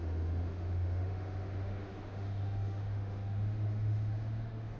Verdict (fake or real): fake